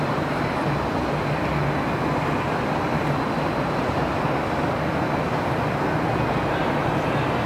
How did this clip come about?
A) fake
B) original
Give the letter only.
B